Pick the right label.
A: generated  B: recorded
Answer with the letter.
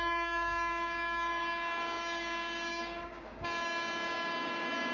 A